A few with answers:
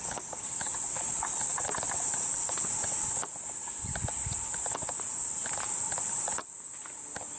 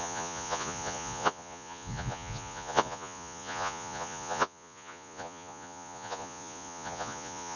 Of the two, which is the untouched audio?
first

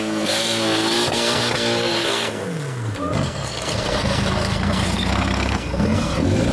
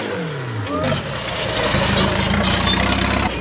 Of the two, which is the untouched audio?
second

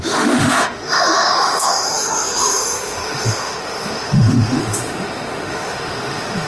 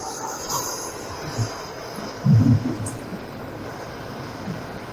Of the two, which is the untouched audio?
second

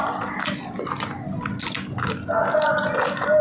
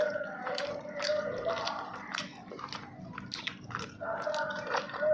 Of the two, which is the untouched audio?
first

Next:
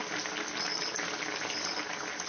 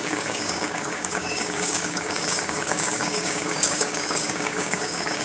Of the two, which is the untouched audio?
first